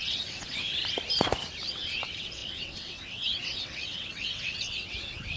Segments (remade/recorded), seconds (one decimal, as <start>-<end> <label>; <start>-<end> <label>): 0.0-0.7 remade; 0.7-1.7 recorded; 1.7-5.4 remade